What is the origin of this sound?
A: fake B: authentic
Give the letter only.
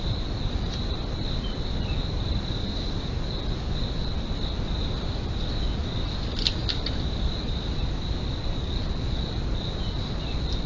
B